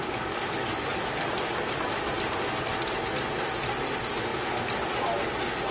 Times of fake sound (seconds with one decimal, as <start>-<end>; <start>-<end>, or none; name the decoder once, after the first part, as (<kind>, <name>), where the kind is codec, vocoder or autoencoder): none